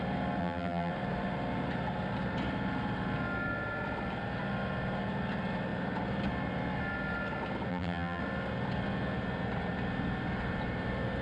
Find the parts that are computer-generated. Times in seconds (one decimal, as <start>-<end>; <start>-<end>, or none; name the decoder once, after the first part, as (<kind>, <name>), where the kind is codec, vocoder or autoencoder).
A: 0.4-0.9 (vocoder, BigVGAN v2); 7.7-8.2